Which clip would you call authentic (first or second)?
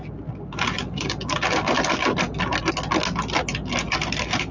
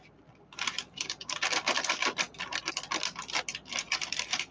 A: first